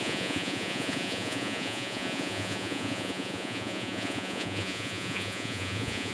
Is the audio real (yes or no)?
no